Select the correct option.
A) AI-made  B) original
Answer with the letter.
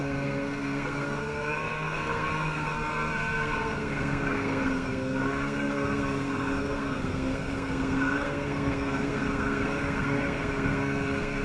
A